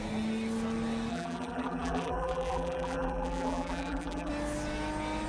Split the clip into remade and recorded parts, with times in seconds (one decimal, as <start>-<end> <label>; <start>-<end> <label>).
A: 0.0-1.1 recorded; 1.1-4.3 remade; 4.3-5.3 recorded